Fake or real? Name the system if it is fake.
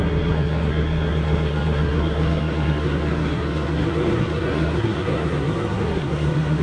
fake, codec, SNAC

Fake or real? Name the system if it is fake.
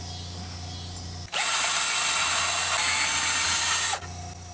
real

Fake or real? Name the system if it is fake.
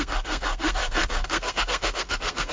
fake, codec, SNAC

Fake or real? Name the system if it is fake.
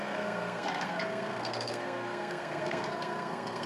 fake, codec, SNAC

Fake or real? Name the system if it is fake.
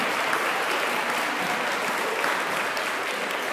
real